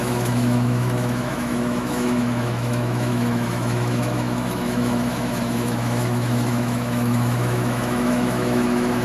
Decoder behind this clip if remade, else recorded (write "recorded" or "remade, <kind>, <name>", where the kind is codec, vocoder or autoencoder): remade, autoencoder, DAC-VAE